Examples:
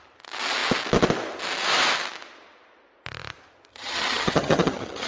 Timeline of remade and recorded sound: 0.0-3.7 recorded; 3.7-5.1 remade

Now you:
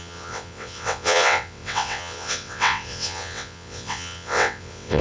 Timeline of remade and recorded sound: 0.0-5.0 remade

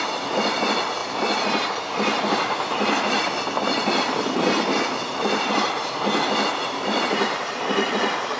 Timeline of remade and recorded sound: 0.0-8.4 recorded

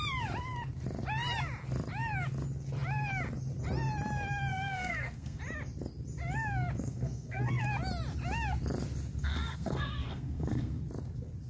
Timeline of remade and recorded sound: 0.0-4.5 recorded; 4.5-5.4 remade; 5.4-6.8 recorded; 6.8-7.6 remade; 7.6-9.2 recorded; 9.2-10.8 remade; 10.8-11.5 recorded

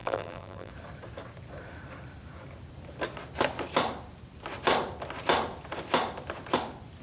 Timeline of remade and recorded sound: 0.0-0.7 remade; 0.7-7.0 recorded

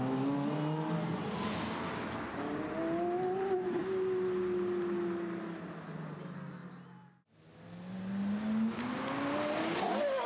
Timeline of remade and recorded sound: 0.0-10.3 recorded

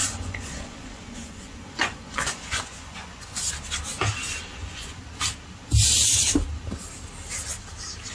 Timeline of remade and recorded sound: 0.0-3.5 remade; 3.5-4.5 recorded; 4.5-5.0 remade; 5.0-8.1 recorded

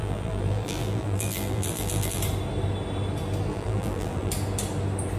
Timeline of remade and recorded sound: 0.0-2.2 remade; 2.2-3.5 recorded; 3.5-4.3 remade; 4.3-5.2 recorded